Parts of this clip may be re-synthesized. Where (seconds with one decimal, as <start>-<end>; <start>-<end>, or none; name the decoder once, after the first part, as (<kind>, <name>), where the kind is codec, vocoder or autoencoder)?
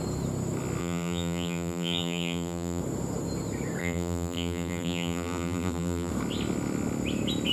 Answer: 0.8-2.8 (vocoder, BigVGAN v2); 3.8-6.1